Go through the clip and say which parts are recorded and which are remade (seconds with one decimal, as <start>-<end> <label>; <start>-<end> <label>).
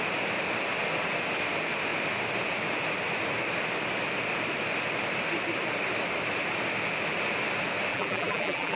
0.0-7.9 recorded; 7.9-8.8 remade